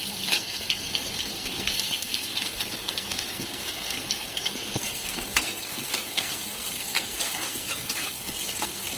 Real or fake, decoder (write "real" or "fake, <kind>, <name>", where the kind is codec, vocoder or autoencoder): fake, codec, SNAC